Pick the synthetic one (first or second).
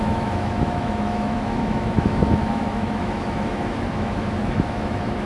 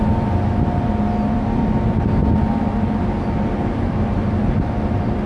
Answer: first